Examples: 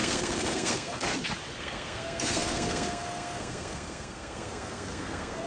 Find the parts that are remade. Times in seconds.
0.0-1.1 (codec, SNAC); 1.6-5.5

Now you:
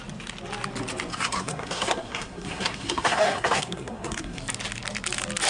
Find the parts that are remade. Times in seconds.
1.1-4.4 (codec, SNAC)

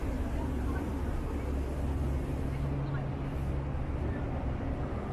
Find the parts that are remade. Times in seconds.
0.0-0.9 (vocoder, BigVGAN v2)

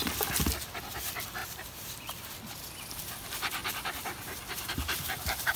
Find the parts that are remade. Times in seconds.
1.4-2.3 (vocoder, BigVGAN v2); 3.6-5.6

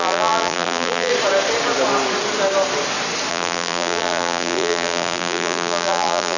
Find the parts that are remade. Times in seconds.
0.0-1.1 (vocoder, BigVGAN v2); 3.3-6.4

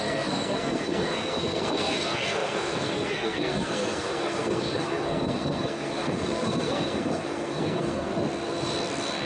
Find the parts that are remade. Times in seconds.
0.0-8.1 (codec, SNAC)